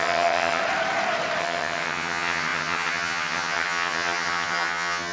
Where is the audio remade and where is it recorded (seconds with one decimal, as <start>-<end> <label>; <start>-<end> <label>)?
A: 0.0-0.6 remade; 0.6-1.4 recorded; 1.4-5.1 remade